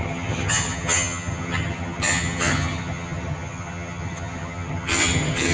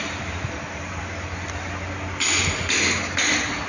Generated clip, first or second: first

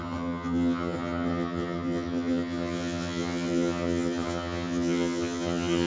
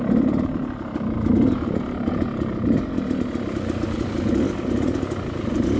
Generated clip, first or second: first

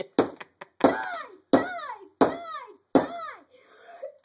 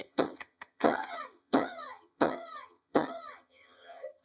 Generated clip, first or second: second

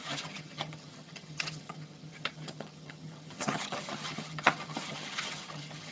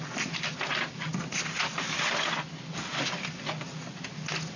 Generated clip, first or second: first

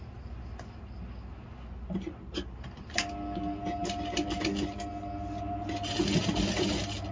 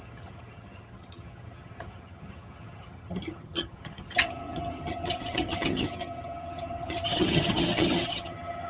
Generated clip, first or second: second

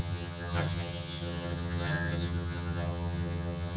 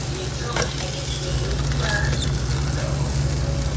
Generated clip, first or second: first